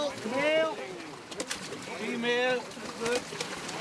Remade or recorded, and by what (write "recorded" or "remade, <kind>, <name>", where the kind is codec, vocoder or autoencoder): recorded